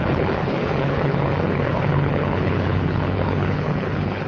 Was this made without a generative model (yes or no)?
no